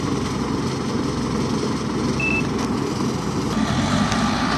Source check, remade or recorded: recorded